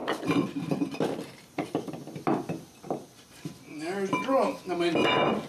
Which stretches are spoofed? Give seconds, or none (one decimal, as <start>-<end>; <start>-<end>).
0.0-1.9